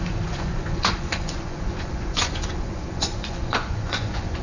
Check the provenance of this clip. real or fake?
fake